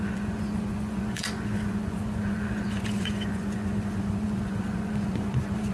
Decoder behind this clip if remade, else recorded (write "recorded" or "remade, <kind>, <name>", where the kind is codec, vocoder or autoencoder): remade, vocoder, Vocos